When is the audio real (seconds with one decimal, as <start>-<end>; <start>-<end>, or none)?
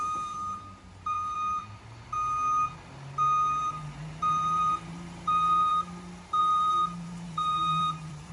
1.6-3.6; 5.7-6.4